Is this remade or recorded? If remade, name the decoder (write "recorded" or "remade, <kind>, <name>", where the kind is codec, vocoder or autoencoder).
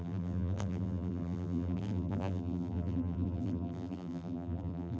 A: remade, vocoder, BigVGAN v2